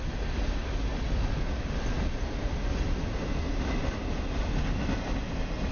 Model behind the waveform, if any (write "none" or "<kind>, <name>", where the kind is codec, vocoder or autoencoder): none